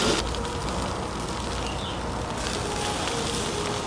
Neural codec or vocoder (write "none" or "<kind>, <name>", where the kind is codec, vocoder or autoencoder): none